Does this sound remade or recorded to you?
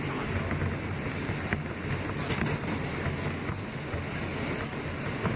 recorded